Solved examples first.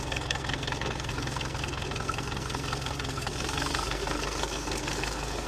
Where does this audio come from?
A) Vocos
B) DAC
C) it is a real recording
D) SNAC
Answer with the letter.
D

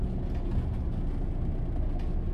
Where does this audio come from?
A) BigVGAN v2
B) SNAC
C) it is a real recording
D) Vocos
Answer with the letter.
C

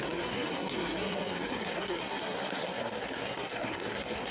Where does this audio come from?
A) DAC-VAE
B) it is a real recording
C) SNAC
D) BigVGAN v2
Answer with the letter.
C